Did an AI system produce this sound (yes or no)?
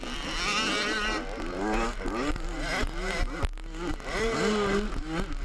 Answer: no